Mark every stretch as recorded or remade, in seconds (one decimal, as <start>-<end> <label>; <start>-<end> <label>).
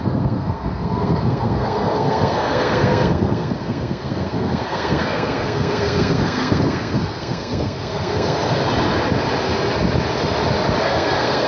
0.0-8.6 remade; 8.6-10.8 recorded; 10.8-11.5 remade